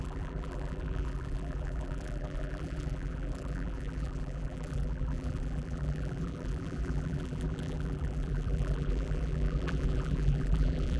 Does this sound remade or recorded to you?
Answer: remade